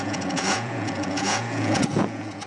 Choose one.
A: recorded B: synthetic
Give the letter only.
B